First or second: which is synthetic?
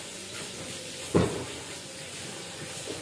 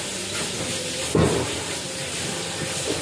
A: first